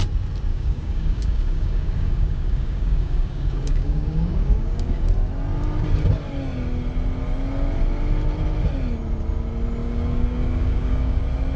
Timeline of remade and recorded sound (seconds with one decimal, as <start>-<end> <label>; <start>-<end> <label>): 0.0-0.5 recorded; 0.5-5.1 remade; 5.1-9.8 recorded; 9.8-11.2 remade; 11.2-11.6 recorded